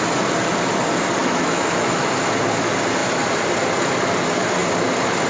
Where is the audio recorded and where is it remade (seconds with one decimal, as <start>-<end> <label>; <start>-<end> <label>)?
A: 0.0-1.2 recorded; 1.2-2.1 remade; 2.1-5.3 recorded